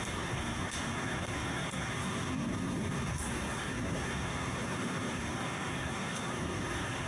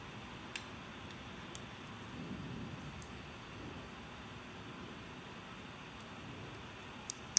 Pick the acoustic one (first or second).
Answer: second